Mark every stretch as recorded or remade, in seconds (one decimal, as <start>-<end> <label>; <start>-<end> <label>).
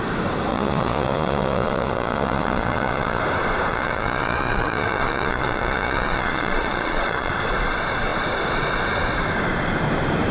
0.0-0.5 recorded; 0.5-3.2 remade; 3.2-3.7 recorded; 3.7-7.3 remade; 7.3-10.3 recorded